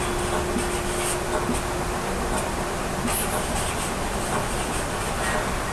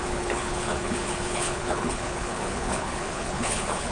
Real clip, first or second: first